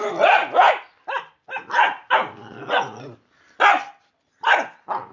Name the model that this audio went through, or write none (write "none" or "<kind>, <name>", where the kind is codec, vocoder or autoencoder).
none